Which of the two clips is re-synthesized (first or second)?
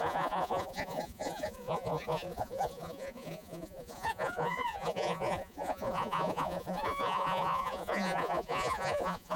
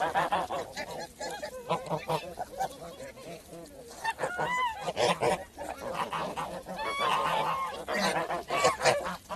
first